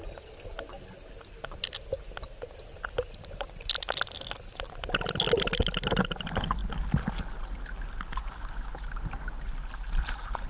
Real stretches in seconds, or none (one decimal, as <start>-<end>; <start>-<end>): 0.0-10.5